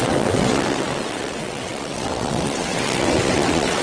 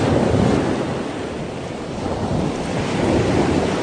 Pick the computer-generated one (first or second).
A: first